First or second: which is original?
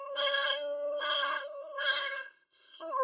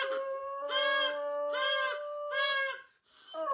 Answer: second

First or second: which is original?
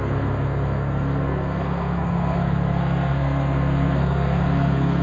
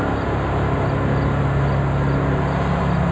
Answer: second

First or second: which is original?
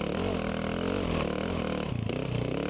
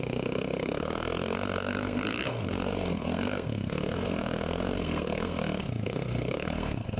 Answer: first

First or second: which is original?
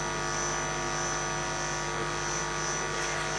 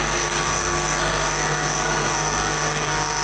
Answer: first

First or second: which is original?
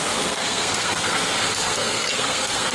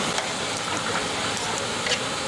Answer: second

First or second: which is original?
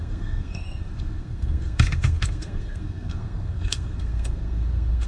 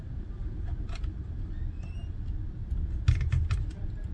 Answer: second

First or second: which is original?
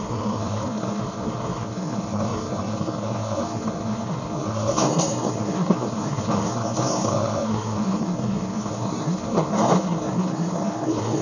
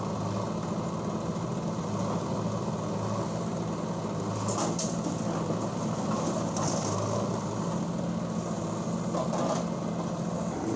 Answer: second